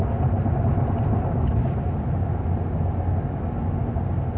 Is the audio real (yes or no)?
yes